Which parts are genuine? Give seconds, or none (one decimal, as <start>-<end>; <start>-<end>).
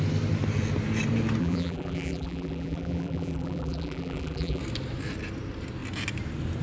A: 0.0-1.4; 4.6-6.6